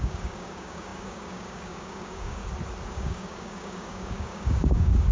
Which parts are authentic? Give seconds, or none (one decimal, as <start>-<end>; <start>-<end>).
2.4-2.9